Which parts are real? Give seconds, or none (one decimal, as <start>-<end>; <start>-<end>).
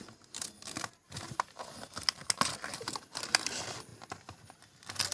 0.0-5.1